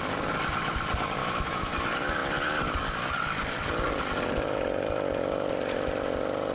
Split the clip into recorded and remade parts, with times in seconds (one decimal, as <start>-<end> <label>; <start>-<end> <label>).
0.0-1.2 recorded; 1.2-1.7 remade; 1.7-6.5 recorded